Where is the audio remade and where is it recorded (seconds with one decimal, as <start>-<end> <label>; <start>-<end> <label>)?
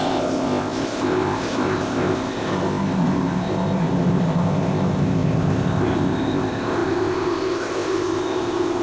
0.0-8.8 remade